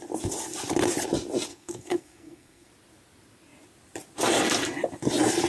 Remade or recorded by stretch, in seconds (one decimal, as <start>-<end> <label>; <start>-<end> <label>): 0.0-1.5 recorded; 1.5-2.7 remade; 2.7-5.5 recorded